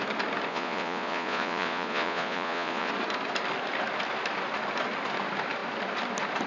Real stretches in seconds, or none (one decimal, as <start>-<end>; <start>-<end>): 0.0-0.5; 2.9-6.5